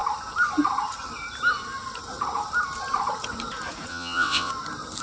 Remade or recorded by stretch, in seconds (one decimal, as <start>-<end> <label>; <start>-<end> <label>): 0.0-3.9 recorded; 3.9-4.5 remade; 4.5-5.0 recorded